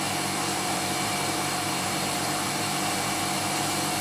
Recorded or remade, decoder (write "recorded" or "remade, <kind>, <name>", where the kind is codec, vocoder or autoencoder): remade, vocoder, BigVGAN v2